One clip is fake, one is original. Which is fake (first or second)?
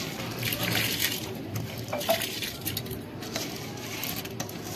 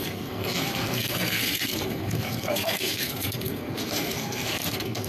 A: second